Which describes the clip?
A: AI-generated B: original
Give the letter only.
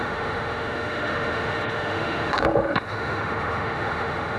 A